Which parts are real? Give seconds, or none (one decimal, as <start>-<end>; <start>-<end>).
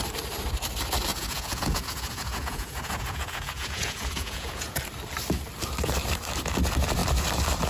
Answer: 0.0-1.1; 4.8-7.7